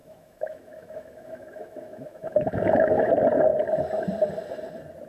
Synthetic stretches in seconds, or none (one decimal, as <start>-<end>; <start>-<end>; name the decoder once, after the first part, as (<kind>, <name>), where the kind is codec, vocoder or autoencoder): 0.0-3.1 (autoencoder, DAC-VAE)